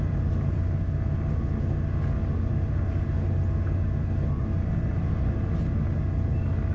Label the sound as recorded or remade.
recorded